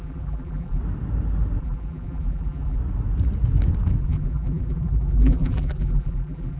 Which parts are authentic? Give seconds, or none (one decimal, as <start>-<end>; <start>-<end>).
0.8-1.6; 2.8-4.0